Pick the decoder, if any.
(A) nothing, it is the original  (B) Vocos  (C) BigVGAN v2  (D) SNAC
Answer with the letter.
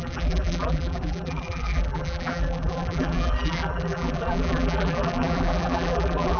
C